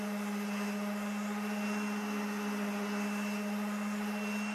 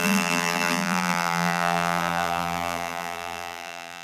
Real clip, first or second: first